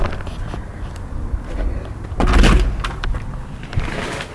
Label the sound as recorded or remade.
recorded